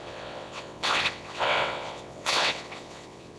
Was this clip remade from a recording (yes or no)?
yes